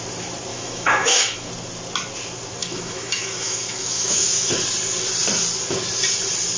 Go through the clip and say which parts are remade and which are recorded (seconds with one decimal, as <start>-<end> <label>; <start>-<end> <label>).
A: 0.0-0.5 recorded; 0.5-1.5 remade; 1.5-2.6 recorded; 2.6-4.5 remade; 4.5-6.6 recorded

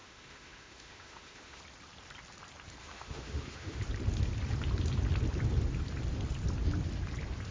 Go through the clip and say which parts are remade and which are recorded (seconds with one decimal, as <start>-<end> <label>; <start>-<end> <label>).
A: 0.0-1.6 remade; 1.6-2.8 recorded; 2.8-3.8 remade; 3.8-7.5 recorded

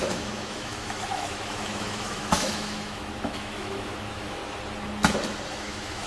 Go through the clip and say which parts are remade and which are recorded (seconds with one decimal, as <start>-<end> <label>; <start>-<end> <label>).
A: 0.0-4.4 remade; 4.4-5.5 recorded; 5.5-6.1 remade

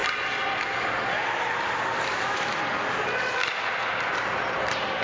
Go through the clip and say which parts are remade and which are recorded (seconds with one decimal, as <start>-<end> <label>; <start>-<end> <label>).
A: 0.0-5.0 recorded